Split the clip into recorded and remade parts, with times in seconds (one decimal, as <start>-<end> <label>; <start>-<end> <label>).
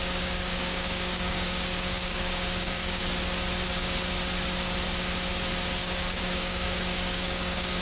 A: 0.0-3.0 remade; 3.0-5.8 recorded; 5.8-7.8 remade